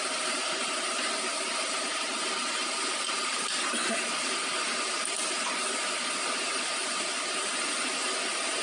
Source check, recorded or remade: remade